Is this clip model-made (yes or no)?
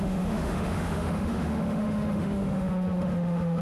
yes